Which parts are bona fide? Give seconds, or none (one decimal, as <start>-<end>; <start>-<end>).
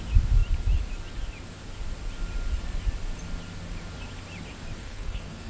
0.0-4.8